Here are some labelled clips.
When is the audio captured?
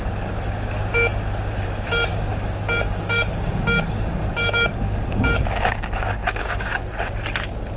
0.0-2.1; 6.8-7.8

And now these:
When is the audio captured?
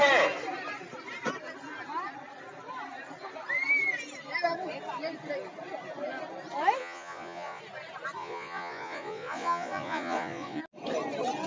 0.0-6.8; 7.6-8.2; 10.6-11.5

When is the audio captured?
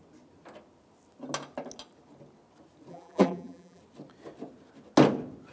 0.0-2.9; 3.8-5.5